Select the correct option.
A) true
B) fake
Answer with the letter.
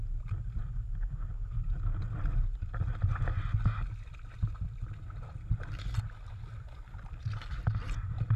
A